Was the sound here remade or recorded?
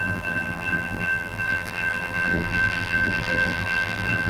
remade